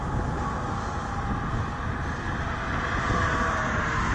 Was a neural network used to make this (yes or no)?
no